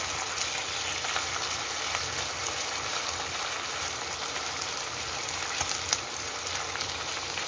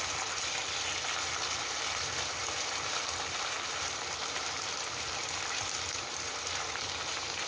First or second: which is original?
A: first